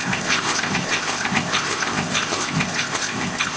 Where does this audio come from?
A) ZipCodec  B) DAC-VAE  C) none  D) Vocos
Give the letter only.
A